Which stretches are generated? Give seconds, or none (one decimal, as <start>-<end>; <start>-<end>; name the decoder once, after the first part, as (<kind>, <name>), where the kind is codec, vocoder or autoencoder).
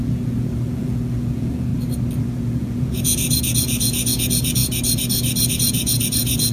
0.0-1.7 (vocoder, Vocos); 2.2-4.6; 5.5-6.5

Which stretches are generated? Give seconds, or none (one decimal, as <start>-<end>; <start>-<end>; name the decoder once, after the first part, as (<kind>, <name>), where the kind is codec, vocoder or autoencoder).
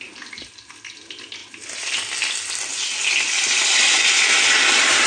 none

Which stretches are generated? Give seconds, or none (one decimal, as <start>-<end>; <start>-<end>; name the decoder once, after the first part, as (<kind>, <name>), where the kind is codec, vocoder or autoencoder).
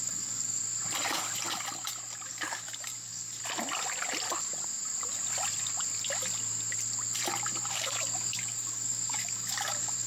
0.0-0.6 (codec, DAC); 2.3-3.4; 7.7-10.1